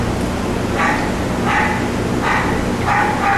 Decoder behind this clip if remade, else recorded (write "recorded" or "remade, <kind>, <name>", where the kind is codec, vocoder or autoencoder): recorded